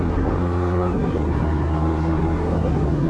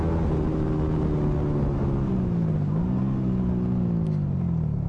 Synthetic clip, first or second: first